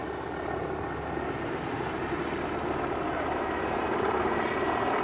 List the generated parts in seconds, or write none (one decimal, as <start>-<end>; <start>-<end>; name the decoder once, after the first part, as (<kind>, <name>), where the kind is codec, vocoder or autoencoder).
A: none